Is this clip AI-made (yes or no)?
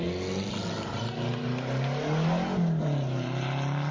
no